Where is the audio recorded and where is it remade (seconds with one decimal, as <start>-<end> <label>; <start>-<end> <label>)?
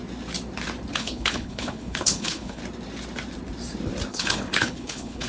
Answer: 0.0-0.9 recorded; 0.9-2.6 remade; 2.6-4.1 recorded; 4.1-5.3 remade